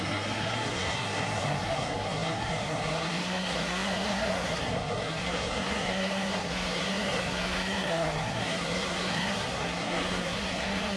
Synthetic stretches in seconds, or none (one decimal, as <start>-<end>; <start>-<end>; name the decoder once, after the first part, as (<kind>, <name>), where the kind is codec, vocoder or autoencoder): 0.0-11.0 (codec, SNAC)

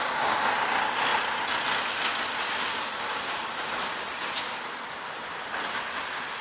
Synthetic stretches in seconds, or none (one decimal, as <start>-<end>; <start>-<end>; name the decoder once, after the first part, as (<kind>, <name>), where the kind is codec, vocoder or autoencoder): none

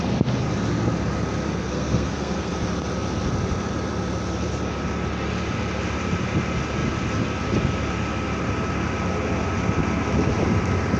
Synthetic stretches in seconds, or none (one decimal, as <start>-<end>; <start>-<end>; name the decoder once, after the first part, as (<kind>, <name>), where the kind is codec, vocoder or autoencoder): 1.5-2.5 (codec, SNAC)

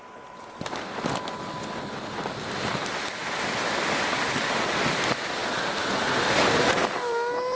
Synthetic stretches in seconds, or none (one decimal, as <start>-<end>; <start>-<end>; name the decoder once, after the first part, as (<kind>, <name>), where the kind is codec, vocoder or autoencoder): none

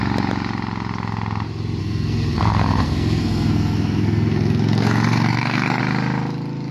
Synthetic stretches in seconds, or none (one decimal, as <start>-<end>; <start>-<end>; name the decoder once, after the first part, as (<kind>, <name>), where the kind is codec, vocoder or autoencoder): 1.8-5.8 (codec, SNAC)